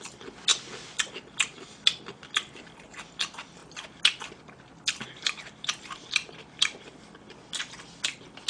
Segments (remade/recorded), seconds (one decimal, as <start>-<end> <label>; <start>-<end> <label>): 0.0-0.5 recorded; 0.5-1.1 remade; 1.1-8.5 recorded